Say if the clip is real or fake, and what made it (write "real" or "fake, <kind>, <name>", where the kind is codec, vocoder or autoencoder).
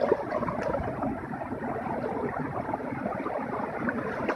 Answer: real